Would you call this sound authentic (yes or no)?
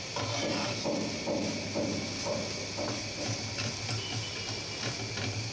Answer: yes